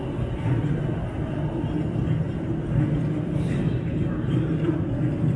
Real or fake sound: real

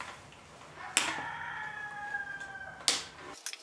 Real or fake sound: real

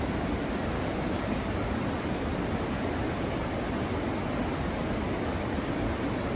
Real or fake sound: real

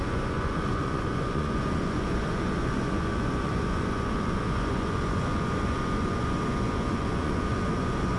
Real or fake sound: fake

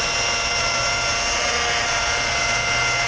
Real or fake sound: real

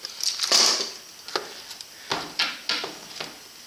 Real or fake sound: real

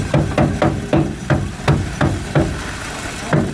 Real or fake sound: real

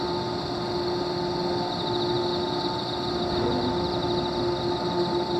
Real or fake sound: real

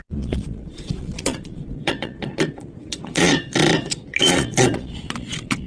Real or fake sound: fake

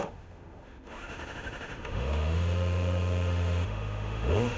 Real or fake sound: fake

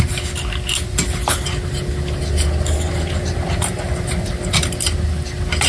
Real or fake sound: real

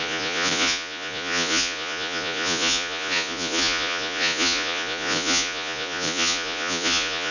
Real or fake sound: fake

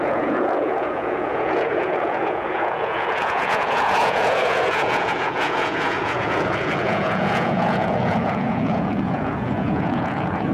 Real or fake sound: fake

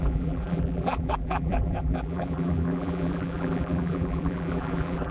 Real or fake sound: fake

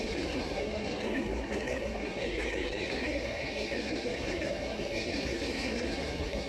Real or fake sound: fake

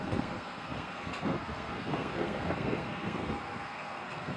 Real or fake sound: fake